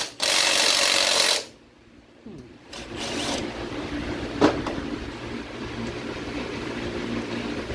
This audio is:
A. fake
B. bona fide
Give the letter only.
A